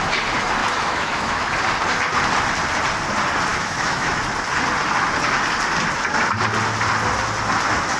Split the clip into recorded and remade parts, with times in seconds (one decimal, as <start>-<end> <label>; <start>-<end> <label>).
0.0-0.6 recorded; 0.6-1.5 remade; 1.5-3.5 recorded; 3.5-4.2 remade; 4.2-8.0 recorded